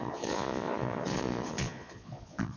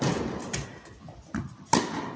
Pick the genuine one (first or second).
second